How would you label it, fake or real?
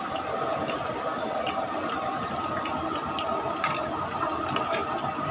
real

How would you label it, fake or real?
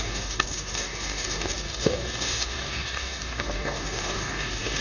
fake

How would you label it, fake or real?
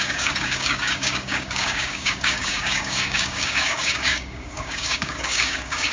fake